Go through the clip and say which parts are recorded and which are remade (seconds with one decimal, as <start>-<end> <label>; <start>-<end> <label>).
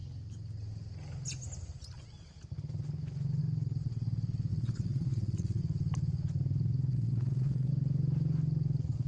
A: 0.0-4.5 recorded; 4.5-5.6 remade; 5.6-6.9 recorded; 6.9-7.7 remade; 7.7-9.1 recorded